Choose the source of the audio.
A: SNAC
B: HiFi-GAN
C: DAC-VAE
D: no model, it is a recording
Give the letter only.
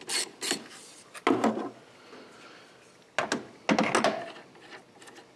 D